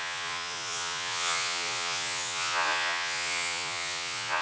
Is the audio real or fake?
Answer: fake